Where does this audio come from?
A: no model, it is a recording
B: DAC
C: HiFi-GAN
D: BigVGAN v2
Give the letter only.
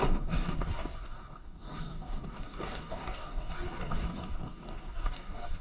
B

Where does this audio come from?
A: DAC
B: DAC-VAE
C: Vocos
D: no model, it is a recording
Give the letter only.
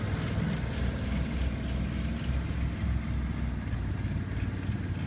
D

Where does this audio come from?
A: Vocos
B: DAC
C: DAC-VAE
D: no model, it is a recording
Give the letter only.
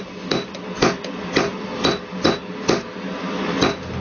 D